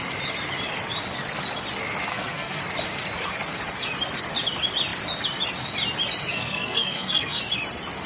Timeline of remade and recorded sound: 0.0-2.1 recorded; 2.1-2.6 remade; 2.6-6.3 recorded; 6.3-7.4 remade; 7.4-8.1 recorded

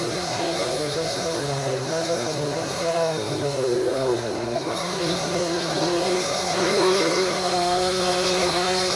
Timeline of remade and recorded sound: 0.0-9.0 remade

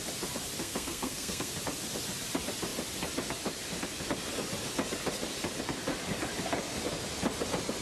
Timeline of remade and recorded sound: 0.0-0.6 recorded; 0.6-1.5 remade; 1.5-7.8 recorded

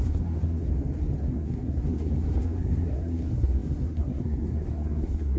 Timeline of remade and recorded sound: 0.0-0.7 remade; 0.7-1.2 recorded; 1.2-5.4 remade

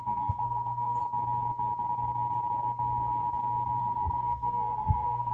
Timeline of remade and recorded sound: 0.0-1.0 remade; 1.0-3.8 recorded; 3.8-5.3 remade

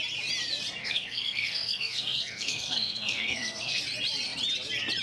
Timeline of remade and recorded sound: 0.0-0.8 recorded; 0.8-3.8 remade; 3.8-5.0 recorded

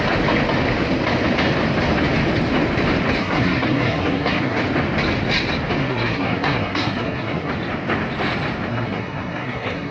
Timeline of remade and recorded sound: 0.0-3.2 recorded; 3.2-4.6 remade; 4.6-5.8 recorded; 5.8-7.5 remade; 7.5-8.7 recorded; 8.7-9.9 remade

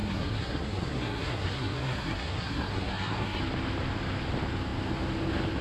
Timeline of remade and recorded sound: 0.0-3.4 remade; 3.4-5.6 recorded